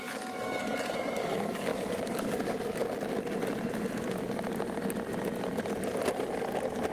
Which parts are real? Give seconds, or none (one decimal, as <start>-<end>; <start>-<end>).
2.8-6.9